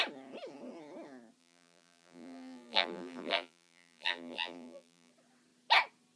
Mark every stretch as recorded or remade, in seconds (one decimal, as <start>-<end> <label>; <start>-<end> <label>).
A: 0.0-1.4 recorded; 1.4-5.1 remade; 5.1-6.2 recorded